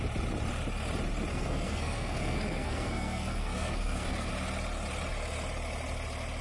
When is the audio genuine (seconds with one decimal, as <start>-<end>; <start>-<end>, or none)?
0.0-1.3; 4.3-6.4